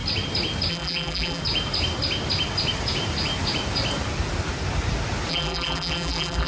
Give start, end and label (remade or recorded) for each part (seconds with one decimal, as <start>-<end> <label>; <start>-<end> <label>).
0.0-0.7 recorded; 0.7-1.4 remade; 1.4-5.3 recorded; 5.3-6.5 remade